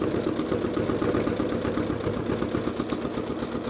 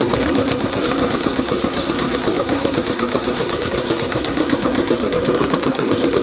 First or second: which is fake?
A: second